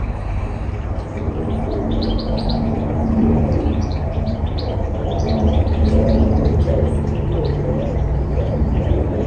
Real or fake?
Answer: fake